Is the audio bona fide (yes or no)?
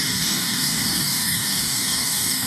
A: no